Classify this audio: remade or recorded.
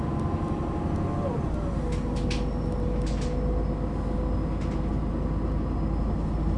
recorded